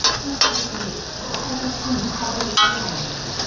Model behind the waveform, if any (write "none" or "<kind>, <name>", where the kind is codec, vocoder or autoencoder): none